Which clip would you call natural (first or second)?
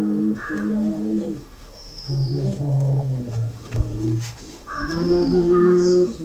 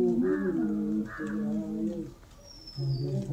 second